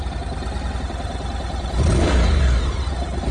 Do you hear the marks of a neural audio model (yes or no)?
no